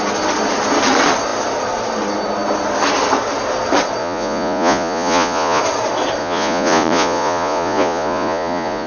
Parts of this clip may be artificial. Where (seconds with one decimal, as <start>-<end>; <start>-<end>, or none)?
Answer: 4.0-5.6; 6.2-8.9